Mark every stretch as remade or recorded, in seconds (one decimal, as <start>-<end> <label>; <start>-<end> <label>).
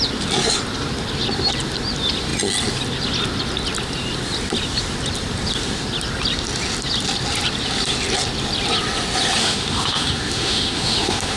0.0-9.4 recorded; 9.4-11.4 remade